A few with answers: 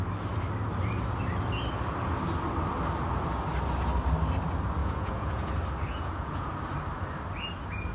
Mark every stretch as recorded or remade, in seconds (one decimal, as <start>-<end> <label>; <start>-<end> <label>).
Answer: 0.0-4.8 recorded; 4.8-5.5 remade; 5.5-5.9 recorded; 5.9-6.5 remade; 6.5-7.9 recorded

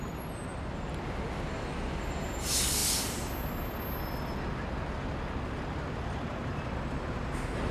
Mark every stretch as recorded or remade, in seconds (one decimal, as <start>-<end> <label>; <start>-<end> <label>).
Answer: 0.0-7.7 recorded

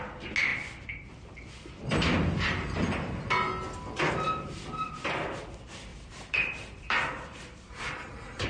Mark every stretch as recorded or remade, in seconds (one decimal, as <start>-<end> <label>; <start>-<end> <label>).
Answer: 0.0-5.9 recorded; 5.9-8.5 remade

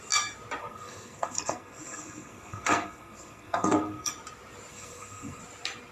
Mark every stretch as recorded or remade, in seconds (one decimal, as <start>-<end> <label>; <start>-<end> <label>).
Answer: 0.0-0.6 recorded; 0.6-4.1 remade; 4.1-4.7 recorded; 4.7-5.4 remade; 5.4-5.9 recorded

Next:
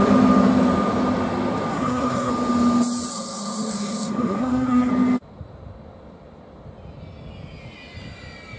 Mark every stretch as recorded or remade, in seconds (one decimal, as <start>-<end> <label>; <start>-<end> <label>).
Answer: 0.0-1.7 recorded; 1.7-2.3 remade; 2.3-3.1 recorded; 3.1-4.9 remade; 4.9-8.6 recorded

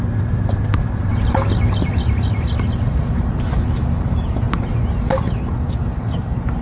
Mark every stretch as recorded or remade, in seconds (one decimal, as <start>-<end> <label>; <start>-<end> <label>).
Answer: 0.0-6.6 recorded

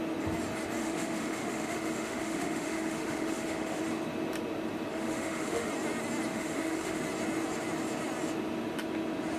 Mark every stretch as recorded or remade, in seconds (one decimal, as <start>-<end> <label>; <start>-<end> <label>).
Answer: 0.0-0.8 recorded; 0.8-3.8 remade; 3.8-4.9 recorded; 4.9-5.7 remade; 5.7-6.3 recorded; 6.3-7.0 remade; 7.0-9.4 recorded